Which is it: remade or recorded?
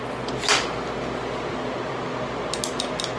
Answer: recorded